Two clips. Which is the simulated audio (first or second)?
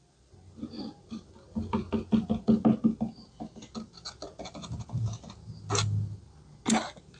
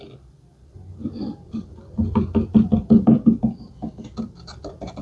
second